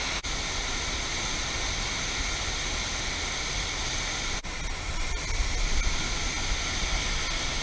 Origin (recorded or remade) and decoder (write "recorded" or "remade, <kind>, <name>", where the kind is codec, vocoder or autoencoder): recorded